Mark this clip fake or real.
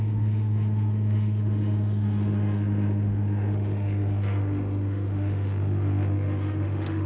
fake